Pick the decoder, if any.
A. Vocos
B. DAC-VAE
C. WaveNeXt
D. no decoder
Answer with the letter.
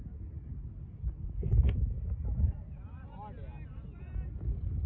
D